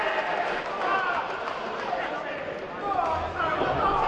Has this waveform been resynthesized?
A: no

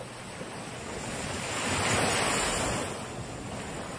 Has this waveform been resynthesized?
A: no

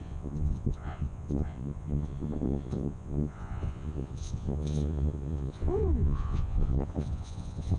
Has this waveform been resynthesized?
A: yes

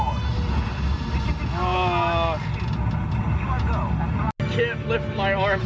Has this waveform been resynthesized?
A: no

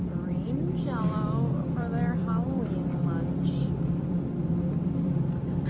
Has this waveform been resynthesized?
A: yes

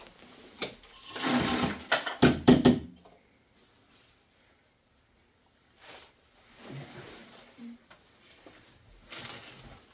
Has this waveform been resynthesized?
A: no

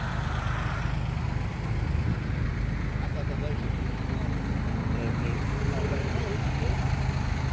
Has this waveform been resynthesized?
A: no